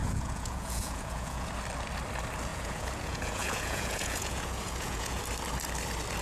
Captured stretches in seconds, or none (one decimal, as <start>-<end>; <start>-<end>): 1.5-2.5; 5.2-6.2